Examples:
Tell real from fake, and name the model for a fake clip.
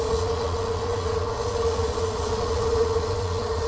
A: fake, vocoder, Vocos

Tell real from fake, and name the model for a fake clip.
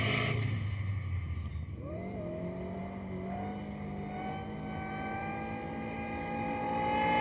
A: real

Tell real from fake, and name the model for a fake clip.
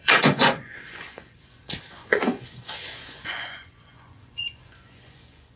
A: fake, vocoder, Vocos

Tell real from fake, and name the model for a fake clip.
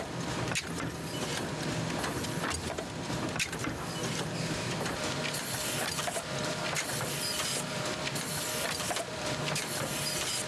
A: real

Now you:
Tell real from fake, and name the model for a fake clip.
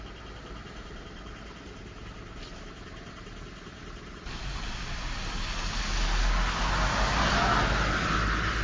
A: real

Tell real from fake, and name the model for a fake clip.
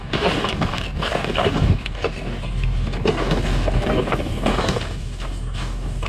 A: fake, codec, DAC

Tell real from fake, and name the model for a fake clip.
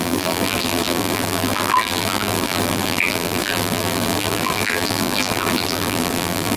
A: fake, vocoder, BigVGAN v2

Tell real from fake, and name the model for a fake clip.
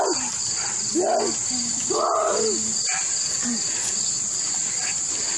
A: real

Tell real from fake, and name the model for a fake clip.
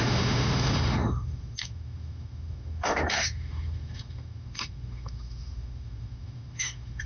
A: fake, autoencoder, DAC-VAE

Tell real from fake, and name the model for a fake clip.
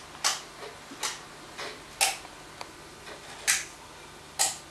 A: real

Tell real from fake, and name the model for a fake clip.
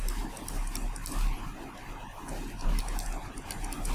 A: real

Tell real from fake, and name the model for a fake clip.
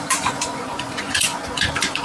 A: fake, vocoder, Vocos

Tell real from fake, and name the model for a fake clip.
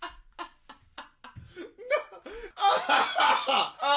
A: real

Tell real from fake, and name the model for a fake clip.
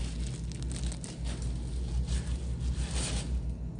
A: real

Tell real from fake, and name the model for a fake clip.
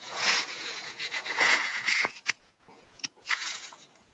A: fake, vocoder, Vocos